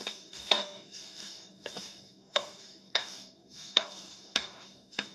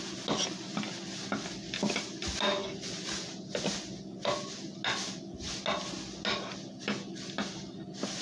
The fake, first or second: first